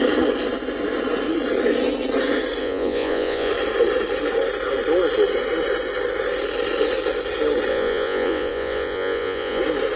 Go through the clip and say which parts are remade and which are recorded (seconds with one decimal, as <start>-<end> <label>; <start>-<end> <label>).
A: 0.0-2.6 recorded; 2.6-3.5 remade; 3.5-7.7 recorded; 7.7-9.6 remade; 9.6-10.0 recorded